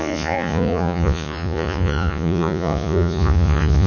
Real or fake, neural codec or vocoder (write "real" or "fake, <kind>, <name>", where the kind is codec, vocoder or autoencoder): fake, vocoder, Vocos